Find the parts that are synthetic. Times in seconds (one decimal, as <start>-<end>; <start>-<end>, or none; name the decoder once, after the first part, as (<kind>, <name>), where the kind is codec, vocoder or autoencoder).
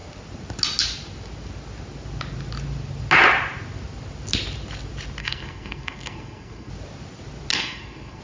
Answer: 5.2-6.7 (codec, SNAC); 7.5-8.2